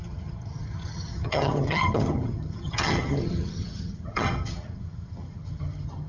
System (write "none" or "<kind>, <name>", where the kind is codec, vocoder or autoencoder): vocoder, HiFi-GAN